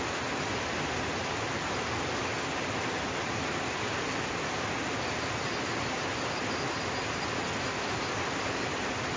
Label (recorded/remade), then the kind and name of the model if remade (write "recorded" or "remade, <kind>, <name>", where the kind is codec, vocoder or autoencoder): recorded